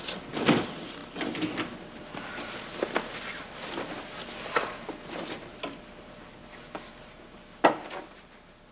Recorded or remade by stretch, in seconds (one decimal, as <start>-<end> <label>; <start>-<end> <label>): 0.0-8.7 recorded